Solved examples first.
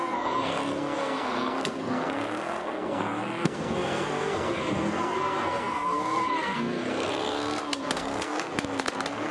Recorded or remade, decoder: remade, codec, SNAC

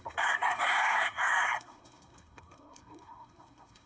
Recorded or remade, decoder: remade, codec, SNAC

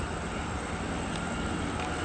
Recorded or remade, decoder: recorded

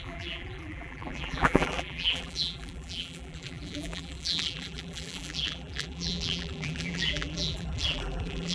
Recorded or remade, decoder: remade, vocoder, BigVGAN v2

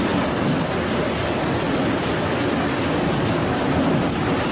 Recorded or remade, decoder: recorded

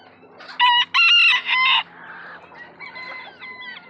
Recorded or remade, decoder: recorded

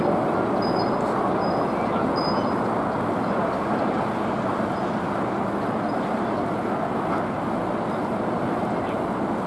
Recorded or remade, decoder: recorded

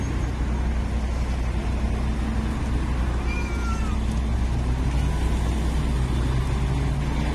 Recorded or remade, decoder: recorded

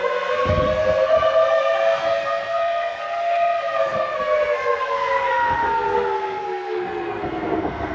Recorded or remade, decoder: remade, codec, SNAC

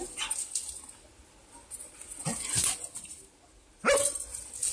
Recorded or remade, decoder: recorded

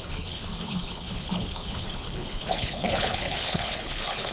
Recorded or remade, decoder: remade, codec, HILCodec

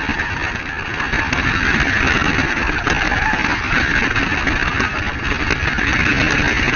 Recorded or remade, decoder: recorded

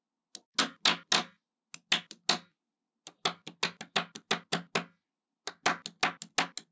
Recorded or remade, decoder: recorded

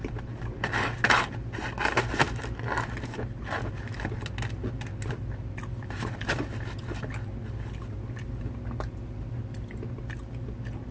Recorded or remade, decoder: recorded